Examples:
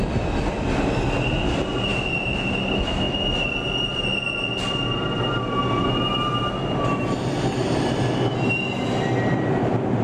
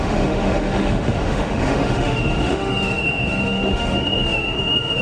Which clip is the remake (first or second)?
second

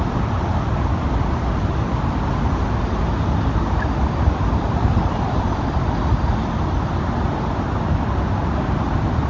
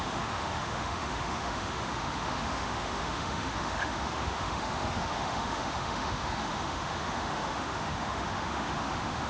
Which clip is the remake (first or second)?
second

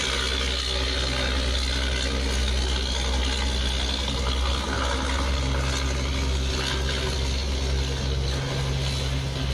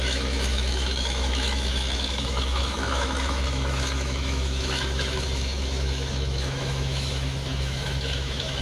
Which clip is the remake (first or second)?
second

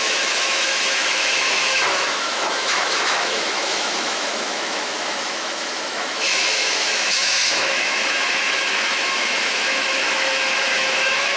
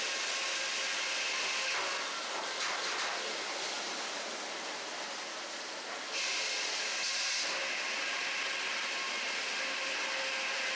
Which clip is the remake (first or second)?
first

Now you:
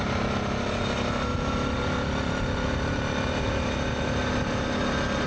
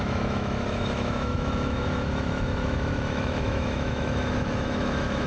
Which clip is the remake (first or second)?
second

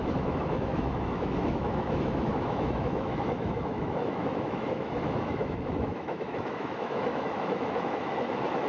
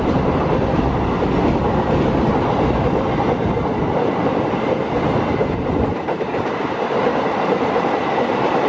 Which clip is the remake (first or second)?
first